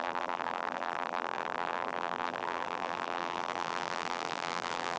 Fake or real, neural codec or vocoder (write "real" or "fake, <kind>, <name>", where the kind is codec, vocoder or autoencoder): fake, vocoder, BigVGAN v2